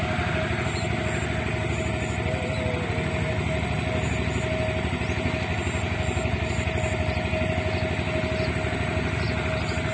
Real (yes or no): yes